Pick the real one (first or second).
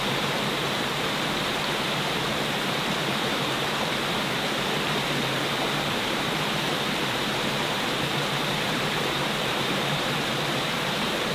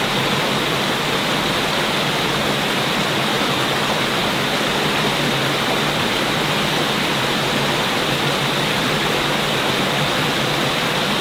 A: second